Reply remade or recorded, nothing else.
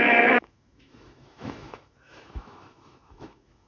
remade